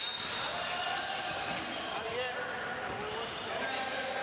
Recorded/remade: recorded